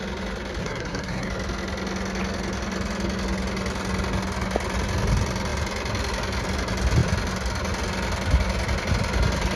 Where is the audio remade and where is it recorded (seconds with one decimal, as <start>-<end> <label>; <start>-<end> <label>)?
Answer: 0.0-0.6 recorded; 0.6-1.3 remade; 1.3-9.6 recorded